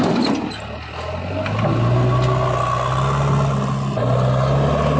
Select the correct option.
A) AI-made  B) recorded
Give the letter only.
B